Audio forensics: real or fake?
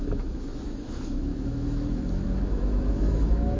fake